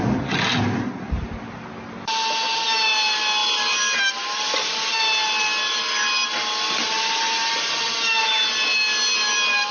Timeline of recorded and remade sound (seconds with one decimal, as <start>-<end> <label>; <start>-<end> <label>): 0.0-9.7 recorded